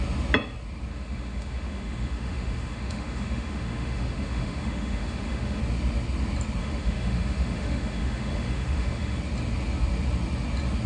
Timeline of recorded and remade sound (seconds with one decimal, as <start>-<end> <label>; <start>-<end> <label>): 0.0-0.9 recorded; 0.9-5.6 remade; 5.6-6.6 recorded; 6.6-9.2 remade; 9.2-10.9 recorded